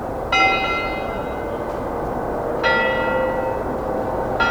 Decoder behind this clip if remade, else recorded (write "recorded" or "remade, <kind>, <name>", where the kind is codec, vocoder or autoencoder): recorded